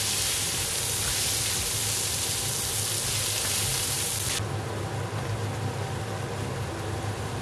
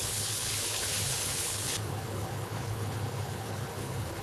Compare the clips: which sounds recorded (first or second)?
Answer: first